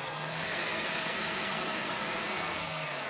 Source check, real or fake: fake